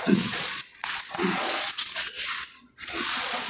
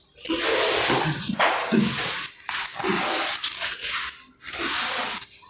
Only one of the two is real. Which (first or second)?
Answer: second